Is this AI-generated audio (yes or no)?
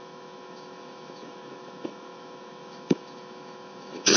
yes